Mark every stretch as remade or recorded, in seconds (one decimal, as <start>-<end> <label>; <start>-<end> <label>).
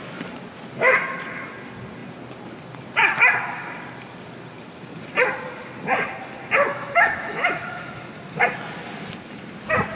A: 0.0-6.7 recorded; 6.7-8.0 remade; 8.0-10.0 recorded